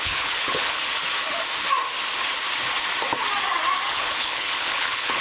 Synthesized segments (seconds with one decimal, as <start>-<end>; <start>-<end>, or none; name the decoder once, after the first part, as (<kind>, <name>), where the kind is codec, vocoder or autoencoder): 0.0-0.8 (codec, HILCodec); 3.9-5.2